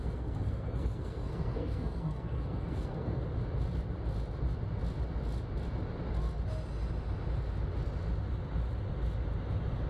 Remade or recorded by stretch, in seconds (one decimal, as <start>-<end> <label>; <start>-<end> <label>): 0.0-3.2 remade; 3.2-9.9 recorded